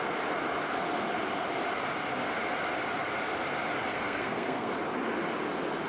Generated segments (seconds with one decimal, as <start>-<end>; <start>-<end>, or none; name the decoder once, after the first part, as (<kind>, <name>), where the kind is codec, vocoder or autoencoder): 3.9-4.7 (codec, SNAC)